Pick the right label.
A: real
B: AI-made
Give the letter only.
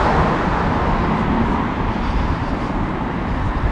A